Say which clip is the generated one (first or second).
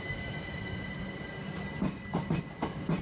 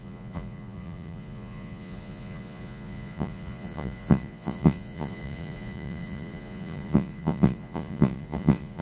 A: second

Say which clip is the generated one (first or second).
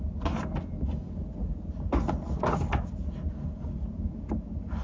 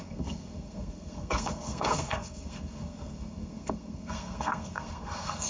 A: second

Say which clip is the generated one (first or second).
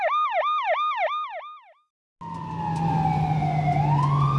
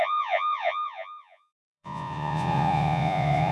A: second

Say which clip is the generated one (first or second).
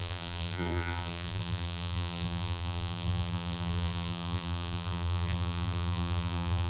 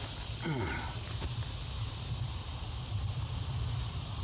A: first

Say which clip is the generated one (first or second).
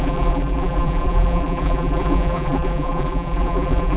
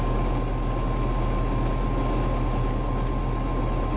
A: first